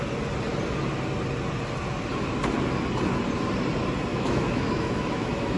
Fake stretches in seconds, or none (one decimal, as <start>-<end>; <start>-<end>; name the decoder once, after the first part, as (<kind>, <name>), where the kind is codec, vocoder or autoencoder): 4.1-5.6 (autoencoder, DAC-VAE)